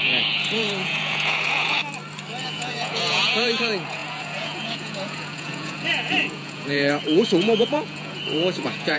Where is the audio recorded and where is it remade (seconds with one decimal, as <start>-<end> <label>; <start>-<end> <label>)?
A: 0.0-1.8 remade; 1.8-2.4 recorded; 2.4-9.0 remade